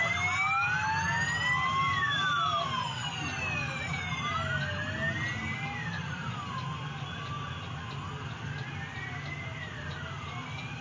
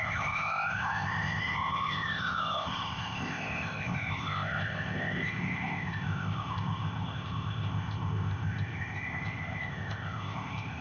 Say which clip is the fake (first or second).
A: second